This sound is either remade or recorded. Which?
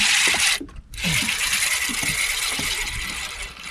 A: recorded